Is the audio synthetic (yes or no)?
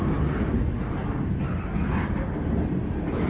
no